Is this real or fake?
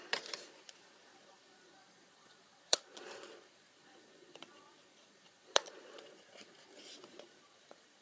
fake